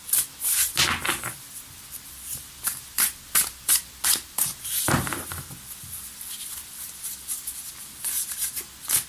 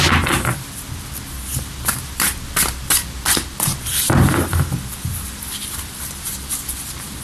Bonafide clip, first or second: first